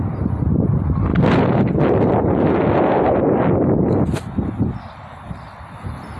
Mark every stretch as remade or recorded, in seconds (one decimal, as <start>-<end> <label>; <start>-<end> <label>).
0.0-6.2 recorded